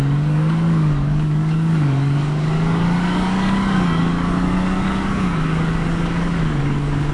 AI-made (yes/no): yes